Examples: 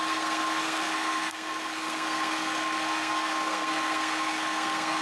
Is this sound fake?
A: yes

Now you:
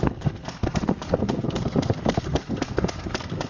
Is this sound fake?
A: yes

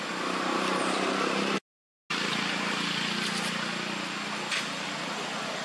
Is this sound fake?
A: no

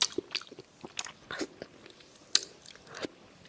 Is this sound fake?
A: no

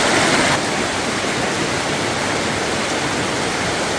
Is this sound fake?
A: no